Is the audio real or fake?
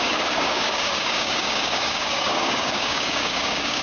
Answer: fake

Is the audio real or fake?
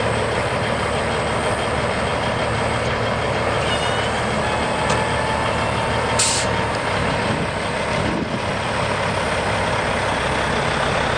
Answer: real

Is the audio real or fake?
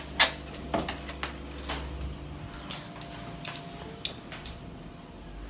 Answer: real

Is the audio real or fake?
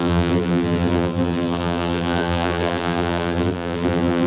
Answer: fake